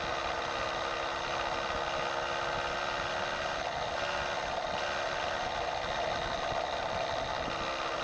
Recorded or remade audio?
recorded